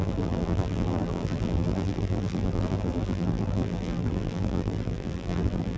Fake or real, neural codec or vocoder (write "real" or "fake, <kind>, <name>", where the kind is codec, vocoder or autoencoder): fake, vocoder, BigVGAN v2